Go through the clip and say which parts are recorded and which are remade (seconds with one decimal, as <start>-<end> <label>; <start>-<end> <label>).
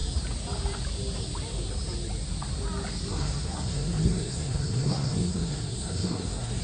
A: 0.0-3.1 recorded; 3.1-6.6 remade